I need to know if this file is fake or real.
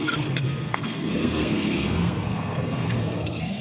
fake